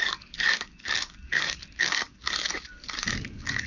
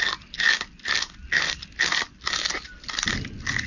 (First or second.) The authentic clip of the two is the second